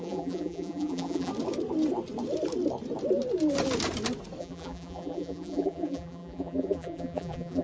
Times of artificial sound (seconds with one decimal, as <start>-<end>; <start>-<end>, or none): 0.0-1.3; 4.4-7.6